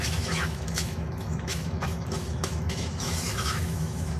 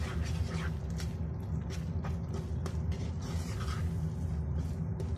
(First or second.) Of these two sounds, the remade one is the first